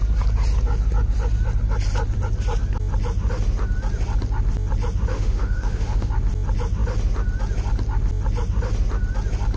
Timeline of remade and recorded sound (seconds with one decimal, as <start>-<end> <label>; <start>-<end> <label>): 0.0-5.1 recorded; 5.1-6.1 remade; 6.1-9.6 recorded